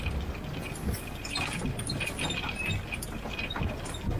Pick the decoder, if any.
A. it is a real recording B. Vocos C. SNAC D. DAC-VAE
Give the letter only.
A